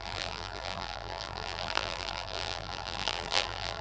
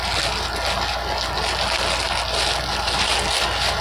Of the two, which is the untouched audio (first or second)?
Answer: second